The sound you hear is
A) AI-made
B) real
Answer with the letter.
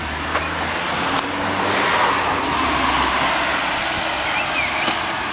B